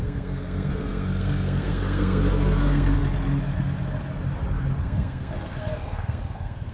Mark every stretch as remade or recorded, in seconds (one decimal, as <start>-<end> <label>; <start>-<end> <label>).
0.0-3.0 remade; 3.0-4.8 recorded; 4.8-6.7 remade